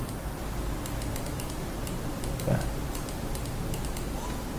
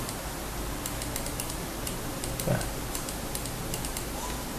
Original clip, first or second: second